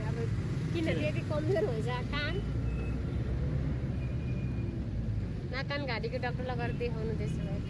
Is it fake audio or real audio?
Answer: real